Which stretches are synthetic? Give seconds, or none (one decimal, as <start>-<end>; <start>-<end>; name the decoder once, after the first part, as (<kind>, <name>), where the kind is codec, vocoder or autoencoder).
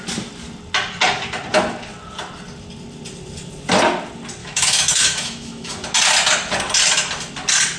4.4-5.7 (autoencoder, DAC-VAE)